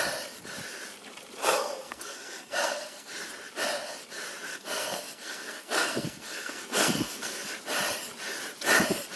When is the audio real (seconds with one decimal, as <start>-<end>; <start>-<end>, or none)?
0.0-1.4; 3.1-4.5; 7.5-9.2